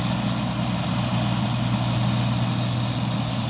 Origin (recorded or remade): recorded